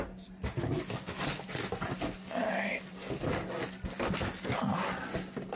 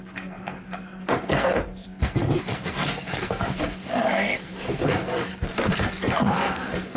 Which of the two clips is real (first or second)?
first